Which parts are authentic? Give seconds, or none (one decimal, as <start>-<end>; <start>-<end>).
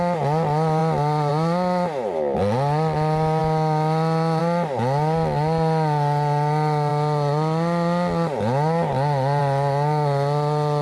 0.0-10.8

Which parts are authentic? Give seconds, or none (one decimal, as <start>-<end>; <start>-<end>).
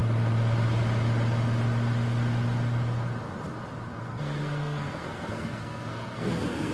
0.0-4.0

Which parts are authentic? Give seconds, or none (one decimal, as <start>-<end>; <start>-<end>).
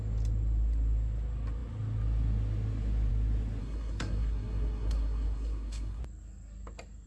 0.0-3.6; 6.0-7.1